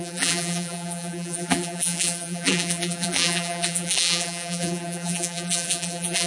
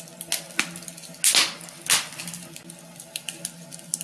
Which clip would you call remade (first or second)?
first